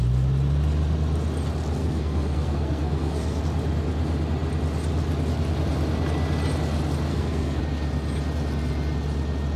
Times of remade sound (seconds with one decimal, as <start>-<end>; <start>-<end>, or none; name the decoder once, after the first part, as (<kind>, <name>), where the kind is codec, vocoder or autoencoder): 1.8-3.4 (codec, SNAC); 7.1-7.6